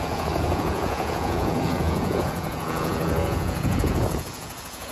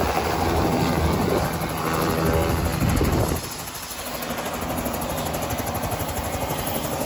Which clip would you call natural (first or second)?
second